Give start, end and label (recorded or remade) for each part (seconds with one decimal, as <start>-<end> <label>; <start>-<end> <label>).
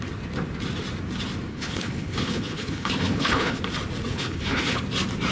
0.0-1.5 recorded; 1.5-3.6 remade; 3.6-4.1 recorded; 4.1-4.8 remade; 4.8-5.3 recorded